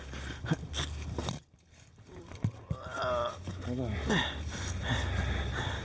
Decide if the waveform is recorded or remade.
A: recorded